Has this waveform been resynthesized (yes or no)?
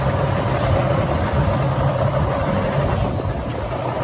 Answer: no